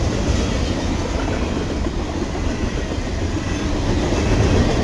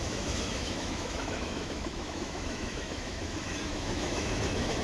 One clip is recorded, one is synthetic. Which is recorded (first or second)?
first